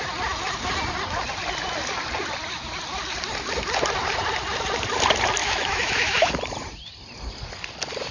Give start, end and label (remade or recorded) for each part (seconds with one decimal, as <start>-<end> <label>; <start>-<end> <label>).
0.0-5.4 recorded; 5.4-6.3 remade; 6.3-8.1 recorded